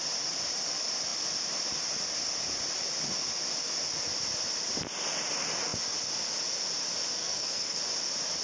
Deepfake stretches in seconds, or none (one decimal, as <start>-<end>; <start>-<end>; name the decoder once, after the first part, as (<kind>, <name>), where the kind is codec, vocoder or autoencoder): 7.2-7.8 (codec, SNAC)